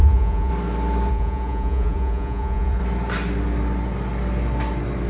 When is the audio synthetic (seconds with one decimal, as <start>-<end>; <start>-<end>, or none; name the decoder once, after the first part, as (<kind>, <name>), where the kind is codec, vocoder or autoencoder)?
0.0-0.5 (vocoder, Vocos); 1.1-2.8